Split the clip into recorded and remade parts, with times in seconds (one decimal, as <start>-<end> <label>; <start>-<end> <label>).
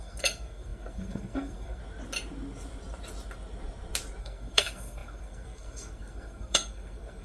0.0-1.8 remade; 1.8-4.2 recorded; 4.2-7.2 remade